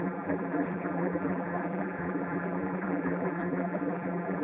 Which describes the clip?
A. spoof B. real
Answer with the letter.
A